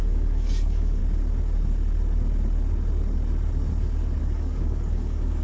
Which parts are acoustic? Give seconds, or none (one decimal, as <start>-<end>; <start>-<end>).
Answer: 1.0-4.2